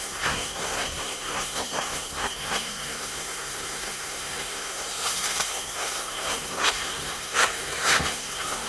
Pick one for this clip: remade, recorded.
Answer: remade